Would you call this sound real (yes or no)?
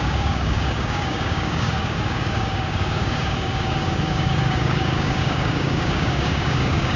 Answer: no